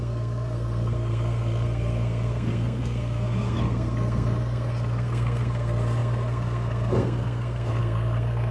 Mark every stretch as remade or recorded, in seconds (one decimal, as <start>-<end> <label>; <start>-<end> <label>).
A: 0.0-8.5 remade